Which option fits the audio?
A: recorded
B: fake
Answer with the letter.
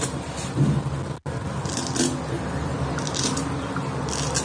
A